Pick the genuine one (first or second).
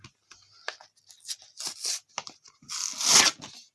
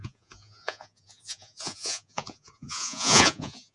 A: first